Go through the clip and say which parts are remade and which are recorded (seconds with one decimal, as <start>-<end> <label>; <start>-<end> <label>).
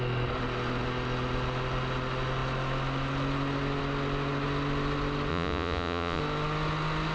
0.0-5.3 recorded; 5.3-6.2 remade; 6.2-7.1 recorded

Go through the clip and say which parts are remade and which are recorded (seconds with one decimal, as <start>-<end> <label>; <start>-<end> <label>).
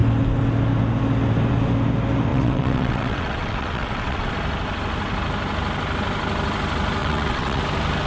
0.0-2.3 recorded; 2.3-4.3 remade; 4.3-7.0 recorded; 7.0-7.6 remade; 7.6-8.1 recorded